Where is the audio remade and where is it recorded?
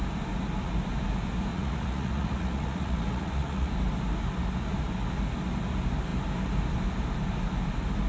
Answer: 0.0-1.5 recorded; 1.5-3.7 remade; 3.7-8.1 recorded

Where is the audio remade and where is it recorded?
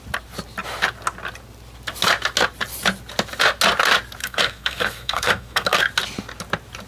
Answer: 0.0-4.2 recorded; 4.2-5.8 remade; 5.8-6.9 recorded